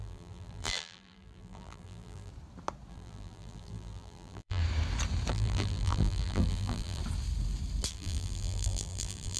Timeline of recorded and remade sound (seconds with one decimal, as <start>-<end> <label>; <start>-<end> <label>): 0.0-2.3 remade; 2.3-2.9 recorded; 2.9-4.6 remade; 4.6-5.3 recorded; 5.3-7.0 remade; 7.0-7.9 recorded; 7.9-9.4 remade